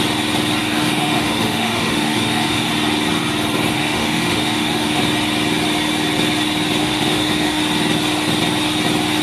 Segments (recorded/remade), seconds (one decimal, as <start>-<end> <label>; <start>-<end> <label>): 0.0-0.6 recorded; 0.6-2.7 remade; 2.7-3.7 recorded; 3.7-5.0 remade; 5.0-6.8 recorded; 6.8-7.6 remade; 7.6-9.2 recorded